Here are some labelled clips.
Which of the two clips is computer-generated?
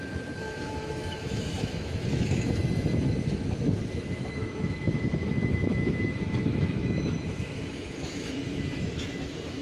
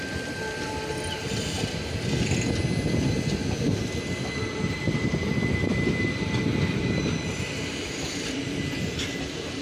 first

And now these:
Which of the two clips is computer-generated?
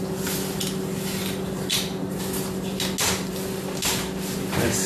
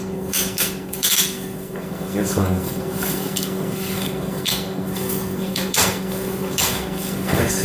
second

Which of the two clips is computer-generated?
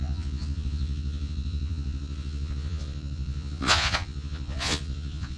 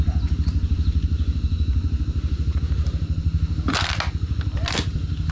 first